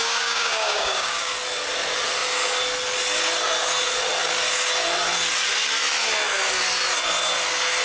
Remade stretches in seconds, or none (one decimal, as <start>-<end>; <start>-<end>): 0.0-1.3

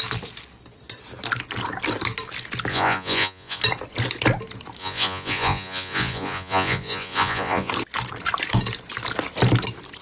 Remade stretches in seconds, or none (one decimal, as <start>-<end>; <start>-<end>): 2.7-3.6; 4.8-7.7

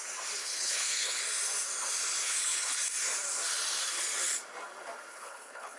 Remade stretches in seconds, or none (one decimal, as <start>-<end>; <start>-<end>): 0.4-1.2; 2.2-2.8; 5.1-5.8

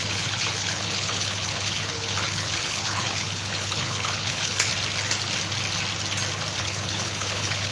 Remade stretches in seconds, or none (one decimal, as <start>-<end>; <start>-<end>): 0.0-4.7; 6.6-7.7